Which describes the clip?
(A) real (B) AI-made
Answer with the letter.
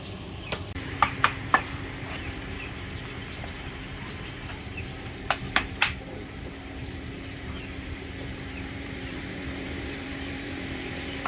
B